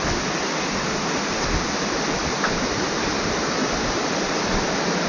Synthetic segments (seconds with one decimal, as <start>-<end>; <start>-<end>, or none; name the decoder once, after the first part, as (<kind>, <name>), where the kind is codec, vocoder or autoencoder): 2.2-3.7 (vocoder, BigVGAN v2)